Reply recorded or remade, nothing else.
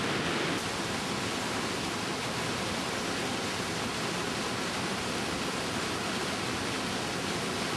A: recorded